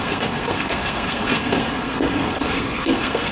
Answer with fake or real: fake